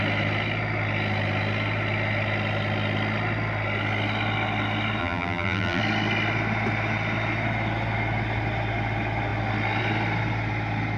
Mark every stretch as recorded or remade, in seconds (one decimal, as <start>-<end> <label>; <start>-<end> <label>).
0.0-5.0 recorded; 5.0-5.8 remade; 5.8-11.0 recorded